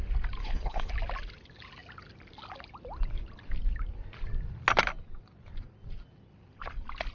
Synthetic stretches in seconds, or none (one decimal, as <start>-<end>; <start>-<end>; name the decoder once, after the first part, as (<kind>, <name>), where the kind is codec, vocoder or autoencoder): 0.4-0.9 (codec, HILCodec)